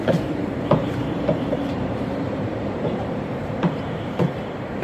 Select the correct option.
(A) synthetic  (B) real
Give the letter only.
A